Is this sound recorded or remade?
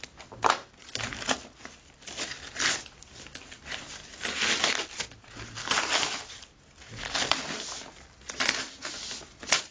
recorded